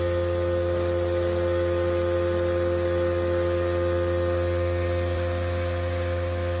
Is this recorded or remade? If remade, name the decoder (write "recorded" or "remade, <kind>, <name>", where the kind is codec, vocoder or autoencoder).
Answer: recorded